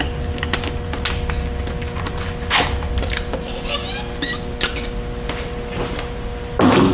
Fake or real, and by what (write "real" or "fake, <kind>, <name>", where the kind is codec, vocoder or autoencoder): real